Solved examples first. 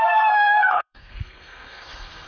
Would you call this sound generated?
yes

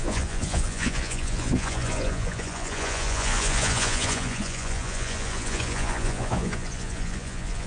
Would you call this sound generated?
yes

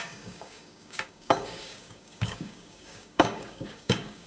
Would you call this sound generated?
yes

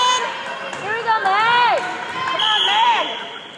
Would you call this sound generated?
no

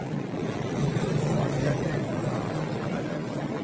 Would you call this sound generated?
yes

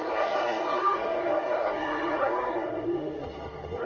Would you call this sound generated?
yes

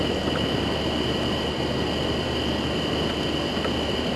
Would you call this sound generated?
no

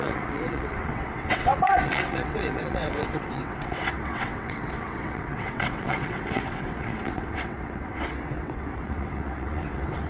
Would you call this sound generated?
yes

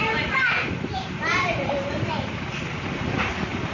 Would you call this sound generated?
yes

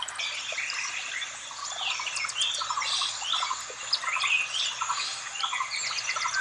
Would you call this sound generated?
no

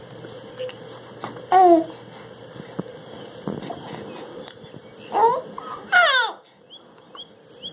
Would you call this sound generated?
no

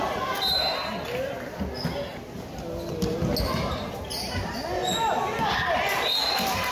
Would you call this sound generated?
no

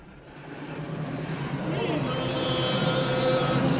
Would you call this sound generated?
yes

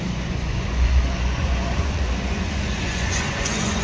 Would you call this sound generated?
yes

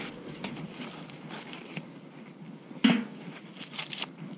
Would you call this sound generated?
no